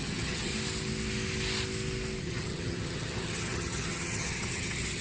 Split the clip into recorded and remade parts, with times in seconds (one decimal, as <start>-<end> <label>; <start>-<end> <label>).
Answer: 0.0-0.5 remade; 0.5-2.2 recorded; 2.2-5.0 remade